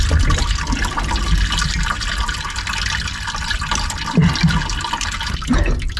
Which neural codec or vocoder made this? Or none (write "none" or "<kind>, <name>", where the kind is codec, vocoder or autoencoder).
none